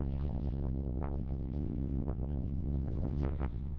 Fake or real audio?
fake